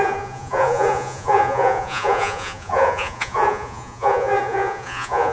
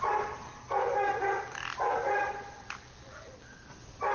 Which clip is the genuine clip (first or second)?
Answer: second